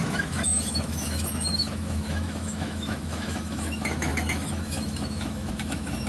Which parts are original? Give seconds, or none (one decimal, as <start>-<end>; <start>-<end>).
none

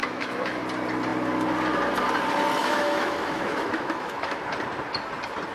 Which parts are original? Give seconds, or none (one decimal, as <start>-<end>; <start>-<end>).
0.6-2.6; 4.4-5.5

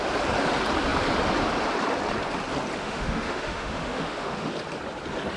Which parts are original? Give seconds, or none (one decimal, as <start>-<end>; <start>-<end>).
0.0-2.8; 4.5-5.4

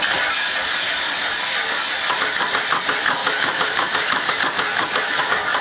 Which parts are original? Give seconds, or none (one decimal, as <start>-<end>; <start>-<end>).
0.0-3.2; 4.3-4.7

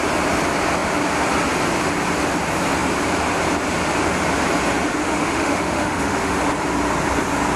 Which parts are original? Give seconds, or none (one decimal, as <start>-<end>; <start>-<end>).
0.0-5.0; 6.4-7.6

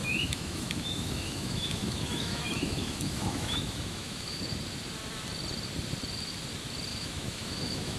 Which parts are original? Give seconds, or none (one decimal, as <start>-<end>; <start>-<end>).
4.4-6.9

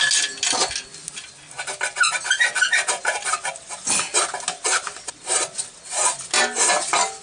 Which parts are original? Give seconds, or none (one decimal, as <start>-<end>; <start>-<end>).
0.0-7.2

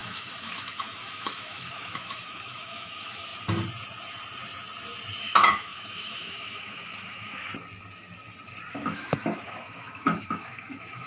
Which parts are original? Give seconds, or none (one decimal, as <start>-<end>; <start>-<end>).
3.3-5.2; 7.5-8.7